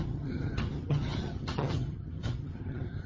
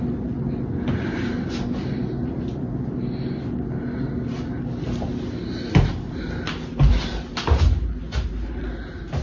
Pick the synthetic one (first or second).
first